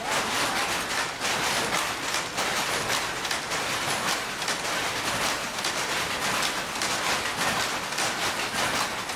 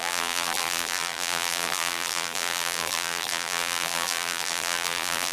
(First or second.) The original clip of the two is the first